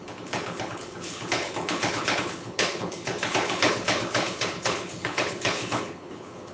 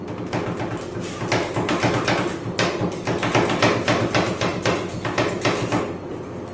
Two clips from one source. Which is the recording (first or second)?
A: second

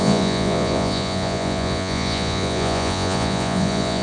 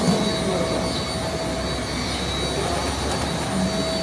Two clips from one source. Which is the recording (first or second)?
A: second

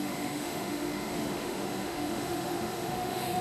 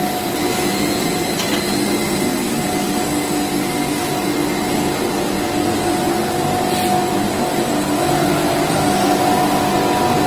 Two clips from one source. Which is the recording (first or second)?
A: second